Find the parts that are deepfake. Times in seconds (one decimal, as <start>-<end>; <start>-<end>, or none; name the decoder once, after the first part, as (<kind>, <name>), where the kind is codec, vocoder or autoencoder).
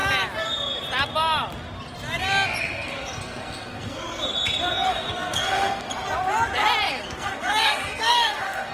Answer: 2.6-4.2 (codec, SNAC); 4.9-5.9; 6.9-8.7